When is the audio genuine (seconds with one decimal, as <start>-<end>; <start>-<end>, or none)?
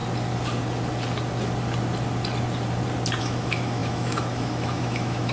0.0-3.2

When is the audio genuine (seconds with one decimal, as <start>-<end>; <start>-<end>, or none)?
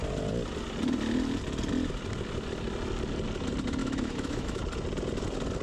0.0-3.8; 4.6-5.6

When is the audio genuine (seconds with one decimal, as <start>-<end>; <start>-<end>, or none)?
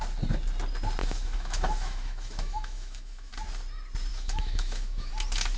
0.0-1.0; 3.3-4.1; 5.1-5.6